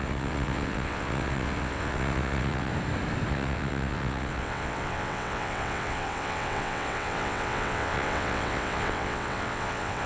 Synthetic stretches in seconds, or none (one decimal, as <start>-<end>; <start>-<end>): 0.0-2.7; 3.3-10.1